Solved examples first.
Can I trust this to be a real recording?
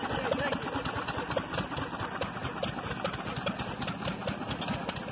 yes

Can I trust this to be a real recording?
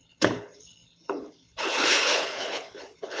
no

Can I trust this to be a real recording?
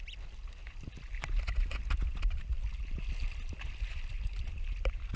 yes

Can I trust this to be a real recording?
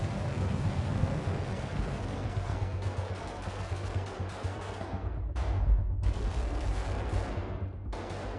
no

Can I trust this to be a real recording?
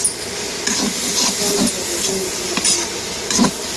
yes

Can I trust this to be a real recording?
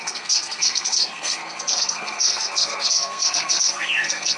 no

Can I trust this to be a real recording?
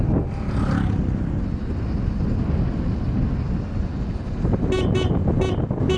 yes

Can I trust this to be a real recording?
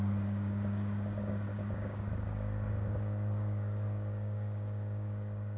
no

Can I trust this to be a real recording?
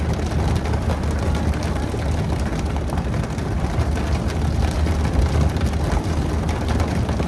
yes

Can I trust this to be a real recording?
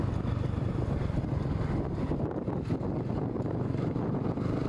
yes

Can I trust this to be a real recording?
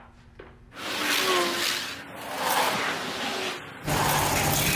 yes